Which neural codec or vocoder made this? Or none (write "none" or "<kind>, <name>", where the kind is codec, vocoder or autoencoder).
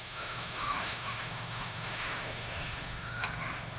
autoencoder, DAC-VAE